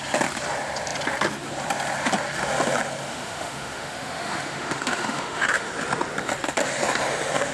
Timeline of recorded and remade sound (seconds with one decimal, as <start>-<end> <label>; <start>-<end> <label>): 0.0-3.1 recorded; 3.1-5.7 remade; 5.7-7.5 recorded